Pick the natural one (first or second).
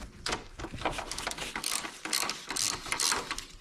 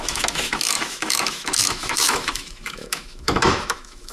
first